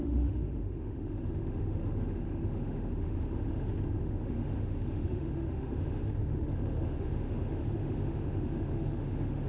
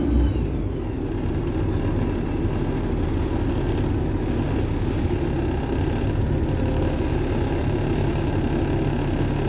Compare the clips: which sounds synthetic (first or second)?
first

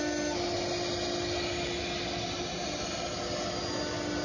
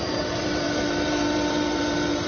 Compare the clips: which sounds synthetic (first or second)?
second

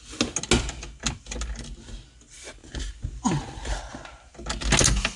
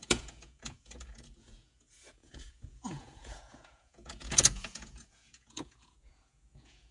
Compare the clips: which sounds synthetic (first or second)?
second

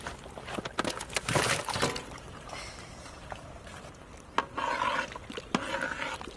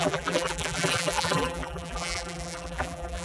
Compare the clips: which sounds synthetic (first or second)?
second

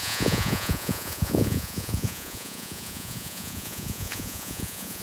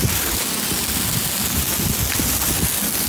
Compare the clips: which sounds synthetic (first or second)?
first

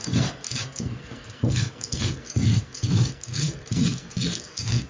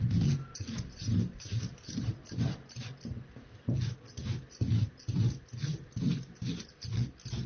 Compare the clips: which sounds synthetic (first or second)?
first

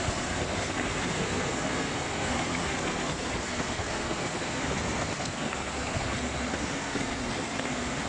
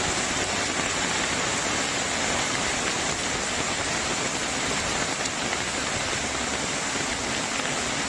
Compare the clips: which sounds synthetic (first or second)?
first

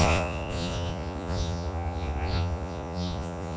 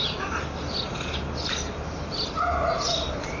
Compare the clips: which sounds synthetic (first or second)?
first